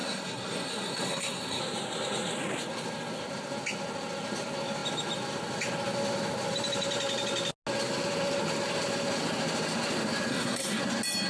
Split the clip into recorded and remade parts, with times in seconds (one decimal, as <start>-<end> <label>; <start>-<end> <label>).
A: 0.0-1.6 remade; 1.6-10.3 recorded; 10.3-10.8 remade; 10.8-11.3 recorded